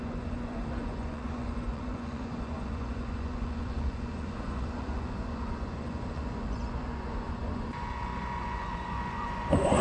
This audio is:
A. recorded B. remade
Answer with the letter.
B